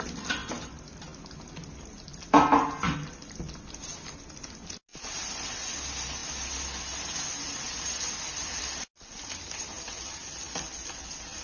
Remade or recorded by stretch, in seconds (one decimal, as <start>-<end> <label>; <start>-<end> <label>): 0.0-11.4 recorded